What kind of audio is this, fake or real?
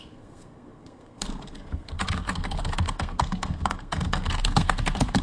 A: fake